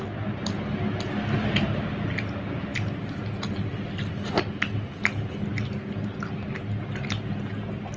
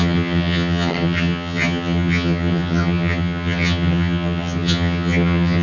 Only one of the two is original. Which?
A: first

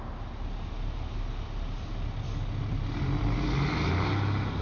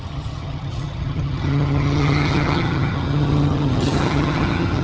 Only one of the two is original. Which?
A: first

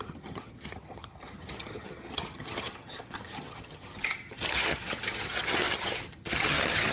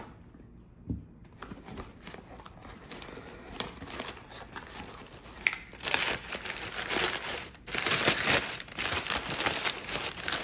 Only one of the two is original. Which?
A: second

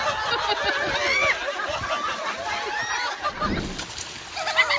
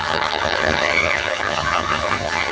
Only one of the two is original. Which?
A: first